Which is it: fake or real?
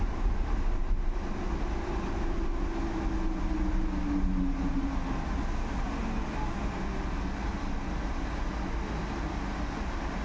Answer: real